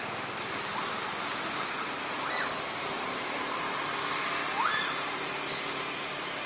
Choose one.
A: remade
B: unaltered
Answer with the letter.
B